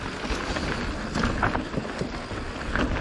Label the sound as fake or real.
real